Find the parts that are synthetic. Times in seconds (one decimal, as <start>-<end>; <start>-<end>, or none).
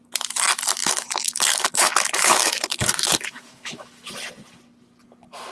0.8-4.1